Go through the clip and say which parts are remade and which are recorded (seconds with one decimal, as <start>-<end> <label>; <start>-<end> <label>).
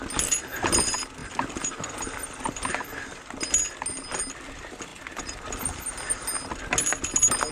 0.0-7.5 recorded